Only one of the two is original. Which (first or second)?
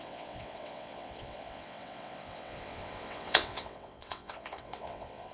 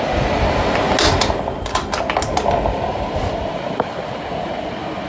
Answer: second